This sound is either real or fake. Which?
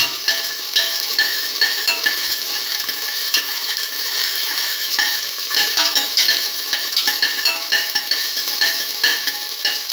fake